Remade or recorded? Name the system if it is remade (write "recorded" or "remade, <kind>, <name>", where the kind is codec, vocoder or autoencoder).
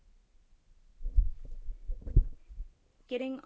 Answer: recorded